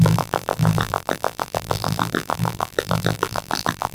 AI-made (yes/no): yes